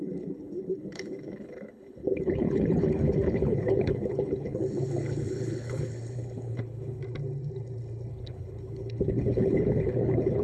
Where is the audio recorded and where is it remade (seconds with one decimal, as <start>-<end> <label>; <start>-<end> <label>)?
0.0-7.0 remade; 7.0-8.1 recorded; 8.1-10.4 remade